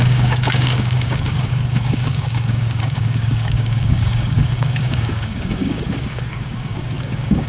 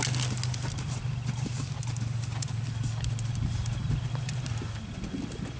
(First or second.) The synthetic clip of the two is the first